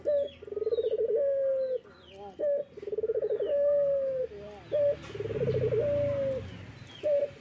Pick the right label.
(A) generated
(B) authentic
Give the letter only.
B